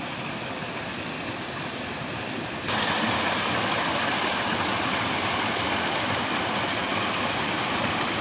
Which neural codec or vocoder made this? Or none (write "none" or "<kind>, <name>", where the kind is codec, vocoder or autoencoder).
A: none